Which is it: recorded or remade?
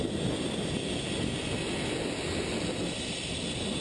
recorded